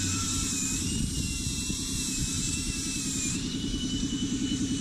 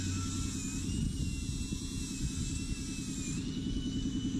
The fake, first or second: first